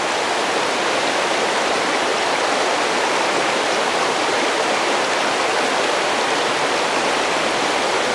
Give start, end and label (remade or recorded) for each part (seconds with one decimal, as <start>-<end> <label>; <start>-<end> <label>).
0.0-2.1 remade; 2.1-4.2 recorded; 4.2-8.1 remade